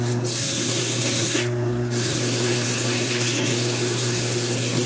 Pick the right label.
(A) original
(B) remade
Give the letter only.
B